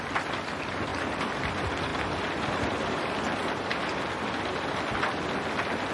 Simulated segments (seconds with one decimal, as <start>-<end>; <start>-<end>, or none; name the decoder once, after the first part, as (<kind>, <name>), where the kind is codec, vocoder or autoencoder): none

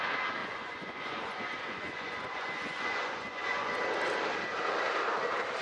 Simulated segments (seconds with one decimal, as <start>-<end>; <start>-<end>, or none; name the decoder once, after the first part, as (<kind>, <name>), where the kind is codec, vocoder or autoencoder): 0.4-3.8 (vocoder, Vocos)